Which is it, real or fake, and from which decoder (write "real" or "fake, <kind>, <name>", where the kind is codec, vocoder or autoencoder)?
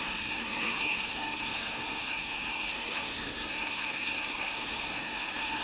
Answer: fake, codec, SNAC